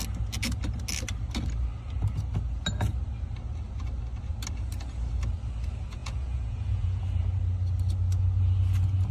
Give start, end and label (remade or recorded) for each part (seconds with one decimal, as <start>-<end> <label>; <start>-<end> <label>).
0.0-6.0 recorded; 6.0-7.0 remade; 7.0-9.1 recorded